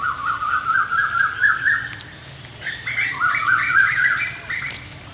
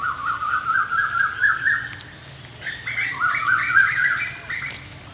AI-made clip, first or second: first